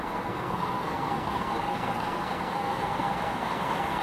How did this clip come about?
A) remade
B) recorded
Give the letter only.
A